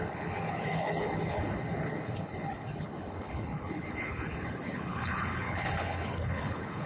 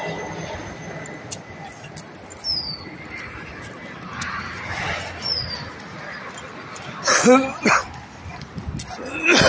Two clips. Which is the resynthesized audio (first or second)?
first